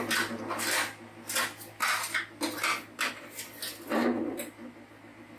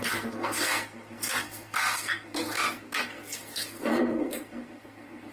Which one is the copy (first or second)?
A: second